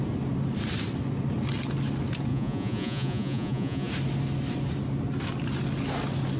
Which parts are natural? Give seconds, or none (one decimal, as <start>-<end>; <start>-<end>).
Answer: 0.0-2.3; 3.9-6.4